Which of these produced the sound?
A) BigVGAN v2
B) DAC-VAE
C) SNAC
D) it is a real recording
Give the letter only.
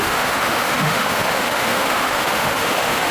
B